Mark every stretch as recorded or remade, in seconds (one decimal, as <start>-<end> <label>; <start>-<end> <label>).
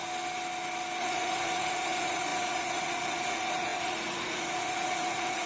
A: 0.0-1.0 recorded; 1.0-5.5 remade